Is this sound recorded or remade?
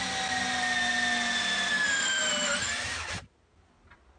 recorded